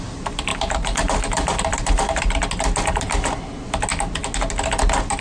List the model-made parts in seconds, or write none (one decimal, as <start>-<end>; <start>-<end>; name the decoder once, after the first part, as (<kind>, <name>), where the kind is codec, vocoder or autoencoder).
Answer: 0.5-2.3 (vocoder, BigVGAN v2)